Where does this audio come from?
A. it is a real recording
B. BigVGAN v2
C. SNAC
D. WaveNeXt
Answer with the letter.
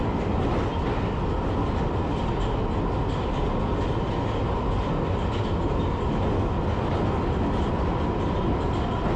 A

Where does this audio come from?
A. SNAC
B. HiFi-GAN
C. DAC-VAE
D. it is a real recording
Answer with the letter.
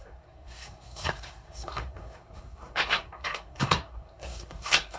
A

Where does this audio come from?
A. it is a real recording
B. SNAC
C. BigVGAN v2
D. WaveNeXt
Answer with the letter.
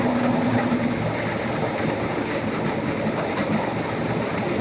A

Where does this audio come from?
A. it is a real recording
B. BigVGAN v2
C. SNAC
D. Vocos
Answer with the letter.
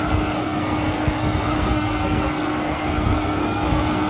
C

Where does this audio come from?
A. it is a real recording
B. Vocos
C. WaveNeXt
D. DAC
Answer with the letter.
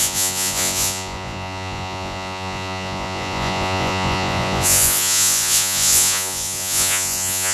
B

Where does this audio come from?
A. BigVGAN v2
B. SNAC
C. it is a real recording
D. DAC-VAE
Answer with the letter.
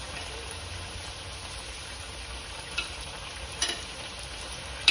A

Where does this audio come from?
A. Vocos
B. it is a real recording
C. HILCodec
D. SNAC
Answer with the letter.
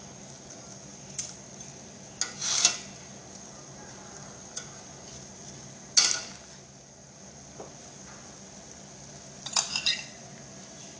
B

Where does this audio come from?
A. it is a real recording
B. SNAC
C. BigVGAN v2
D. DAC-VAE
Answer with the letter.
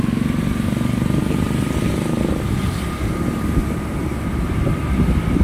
A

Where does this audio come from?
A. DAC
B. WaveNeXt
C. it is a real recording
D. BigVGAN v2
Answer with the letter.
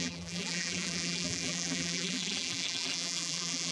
D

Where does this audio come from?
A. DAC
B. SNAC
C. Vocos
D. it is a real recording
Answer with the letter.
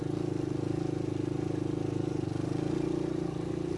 D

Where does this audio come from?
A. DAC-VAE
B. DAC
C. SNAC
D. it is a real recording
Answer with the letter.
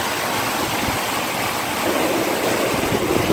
D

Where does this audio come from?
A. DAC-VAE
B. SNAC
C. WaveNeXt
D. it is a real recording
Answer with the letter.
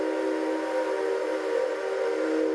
D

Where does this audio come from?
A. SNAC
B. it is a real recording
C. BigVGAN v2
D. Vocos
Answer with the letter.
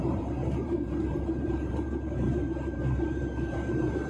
C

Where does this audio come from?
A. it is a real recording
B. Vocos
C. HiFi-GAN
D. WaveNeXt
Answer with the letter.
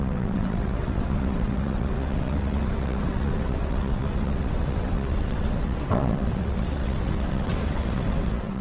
D